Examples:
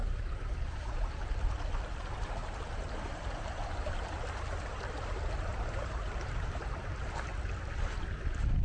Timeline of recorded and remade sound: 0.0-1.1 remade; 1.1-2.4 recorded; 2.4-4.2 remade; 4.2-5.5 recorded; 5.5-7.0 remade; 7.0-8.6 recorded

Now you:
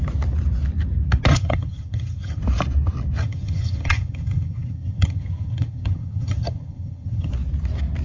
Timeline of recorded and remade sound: 0.0-1.3 recorded; 1.3-2.4 remade; 2.4-3.2 recorded; 3.2-7.3 remade; 7.3-8.0 recorded

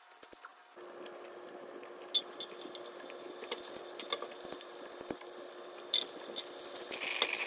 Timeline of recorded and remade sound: 0.0-7.5 recorded

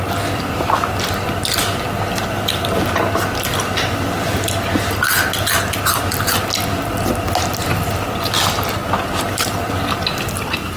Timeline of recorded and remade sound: 0.0-10.8 recorded

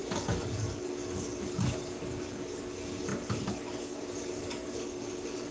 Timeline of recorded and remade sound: 0.0-5.5 remade

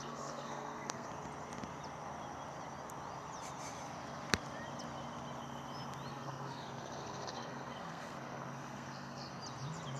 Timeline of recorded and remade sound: 0.0-1.1 remade; 1.1-6.1 recorded; 6.1-9.3 remade; 9.3-10.0 recorded

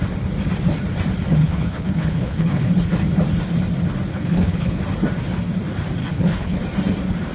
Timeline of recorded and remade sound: 0.0-1.4 recorded; 1.4-2.7 remade; 2.7-4.1 recorded; 4.1-4.8 remade; 4.8-6.0 recorded; 6.0-6.6 remade; 6.6-7.3 recorded

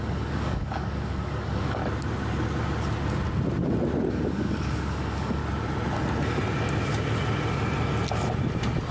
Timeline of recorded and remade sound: 0.0-1.8 remade; 1.8-4.1 recorded; 4.1-5.4 remade; 5.4-8.9 recorded